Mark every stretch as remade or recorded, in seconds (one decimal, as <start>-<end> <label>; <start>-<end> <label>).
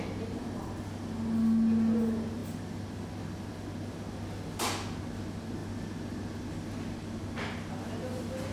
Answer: 0.0-8.5 recorded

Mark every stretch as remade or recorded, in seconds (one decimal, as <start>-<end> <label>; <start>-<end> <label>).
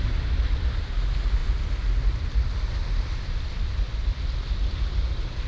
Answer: 0.0-5.5 recorded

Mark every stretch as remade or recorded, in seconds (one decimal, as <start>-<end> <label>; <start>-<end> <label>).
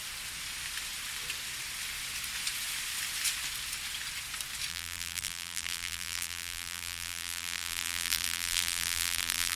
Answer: 0.0-4.7 recorded; 4.7-9.6 remade